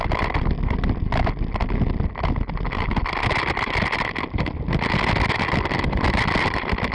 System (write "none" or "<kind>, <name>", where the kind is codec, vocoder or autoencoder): none